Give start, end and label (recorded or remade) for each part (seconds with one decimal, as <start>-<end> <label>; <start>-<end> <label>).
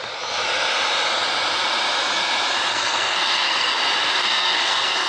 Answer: 0.0-2.7 recorded; 2.7-3.8 remade; 3.8-4.2 recorded; 4.2-5.1 remade